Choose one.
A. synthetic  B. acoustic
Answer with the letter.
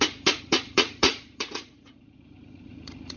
A